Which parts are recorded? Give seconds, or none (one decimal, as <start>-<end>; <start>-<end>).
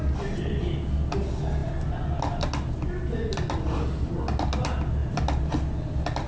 0.0-6.3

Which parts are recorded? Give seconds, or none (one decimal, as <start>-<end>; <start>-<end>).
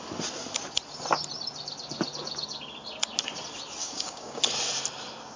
0.0-3.8; 4.4-5.4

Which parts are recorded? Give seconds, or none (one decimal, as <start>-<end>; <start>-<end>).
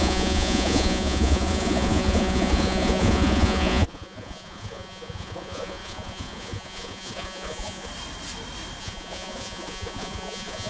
7.9-8.8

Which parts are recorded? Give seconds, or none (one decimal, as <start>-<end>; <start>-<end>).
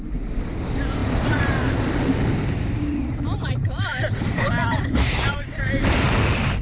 0.0-1.0; 2.6-3.4; 5.6-6.6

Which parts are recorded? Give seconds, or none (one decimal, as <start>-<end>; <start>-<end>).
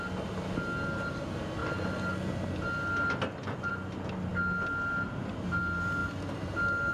0.0-6.9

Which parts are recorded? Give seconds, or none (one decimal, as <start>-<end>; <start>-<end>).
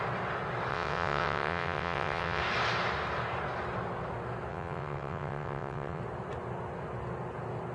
0.0-0.7; 2.4-4.5; 6.0-7.7